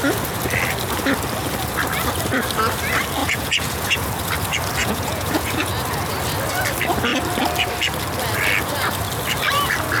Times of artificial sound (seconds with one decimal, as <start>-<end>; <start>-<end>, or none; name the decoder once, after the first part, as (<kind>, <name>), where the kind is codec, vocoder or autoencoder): 3.2-4.1 (vocoder, Vocos); 4.8-5.7